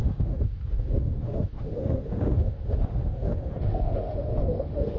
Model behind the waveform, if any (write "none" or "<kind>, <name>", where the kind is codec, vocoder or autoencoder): autoencoder, DAC-VAE